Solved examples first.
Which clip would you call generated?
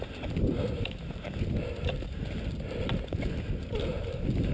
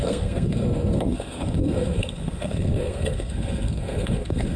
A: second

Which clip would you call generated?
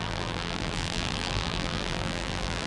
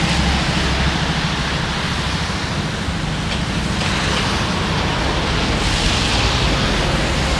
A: first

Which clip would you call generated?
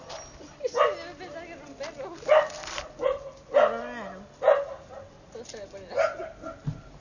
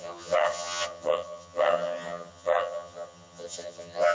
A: second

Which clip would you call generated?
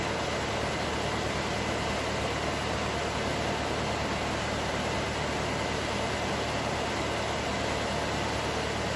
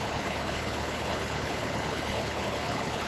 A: second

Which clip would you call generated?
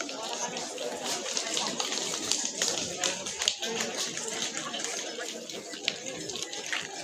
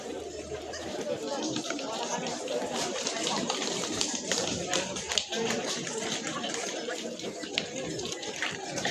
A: second